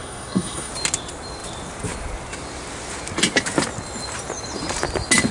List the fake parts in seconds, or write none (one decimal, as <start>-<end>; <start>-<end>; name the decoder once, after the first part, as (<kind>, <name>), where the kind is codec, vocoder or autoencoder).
0.0-0.7 (codec, SNAC)